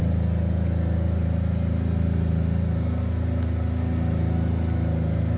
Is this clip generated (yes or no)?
no